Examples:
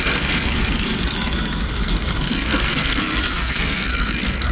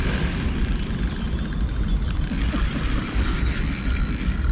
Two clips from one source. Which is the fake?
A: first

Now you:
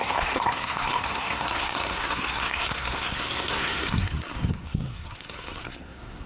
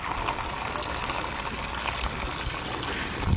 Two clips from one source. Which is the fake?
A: first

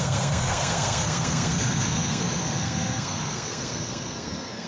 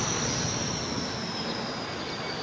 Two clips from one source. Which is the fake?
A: first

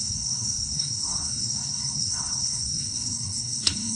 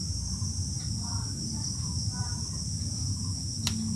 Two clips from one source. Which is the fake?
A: first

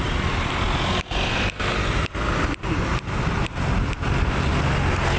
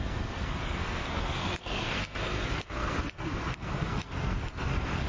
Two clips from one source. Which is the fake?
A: second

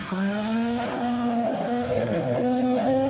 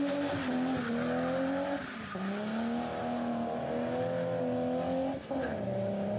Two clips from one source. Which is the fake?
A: first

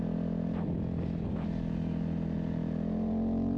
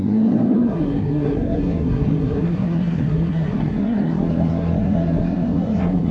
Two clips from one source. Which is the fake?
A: second